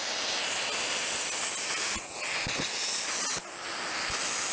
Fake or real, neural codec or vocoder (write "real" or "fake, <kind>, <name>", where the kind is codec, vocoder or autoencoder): real